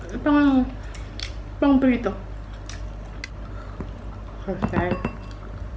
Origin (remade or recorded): recorded